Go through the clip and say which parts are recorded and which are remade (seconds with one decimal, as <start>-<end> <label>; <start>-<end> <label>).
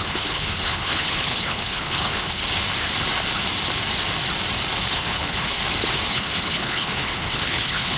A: 0.0-2.4 remade; 2.4-4.9 recorded; 4.9-5.6 remade; 5.6-6.1 recorded; 6.1-8.0 remade